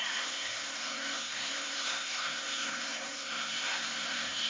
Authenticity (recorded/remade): remade